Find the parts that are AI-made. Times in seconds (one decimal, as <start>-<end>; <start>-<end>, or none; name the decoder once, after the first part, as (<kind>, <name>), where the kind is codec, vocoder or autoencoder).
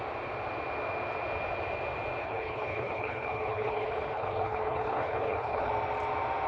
2.2-5.7 (codec, HILCodec)